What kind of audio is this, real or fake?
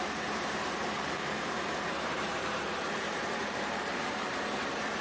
fake